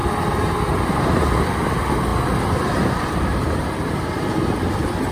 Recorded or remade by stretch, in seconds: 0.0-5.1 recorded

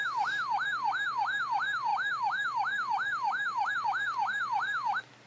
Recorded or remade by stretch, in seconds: 0.0-1.9 recorded; 1.9-3.7 remade; 3.7-5.3 recorded